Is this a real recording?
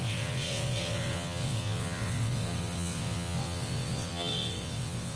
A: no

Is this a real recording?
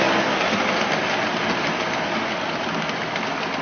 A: yes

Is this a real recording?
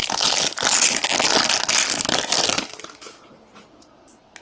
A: yes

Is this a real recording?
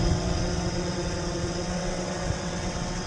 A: no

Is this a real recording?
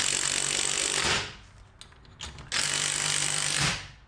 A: yes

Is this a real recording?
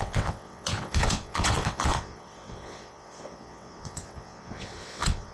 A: no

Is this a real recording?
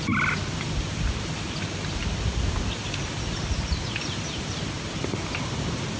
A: yes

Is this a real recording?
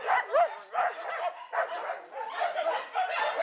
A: yes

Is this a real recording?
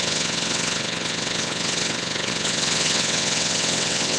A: no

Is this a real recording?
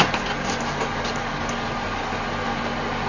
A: yes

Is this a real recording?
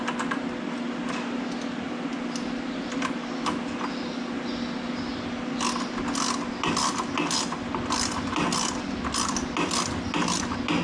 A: yes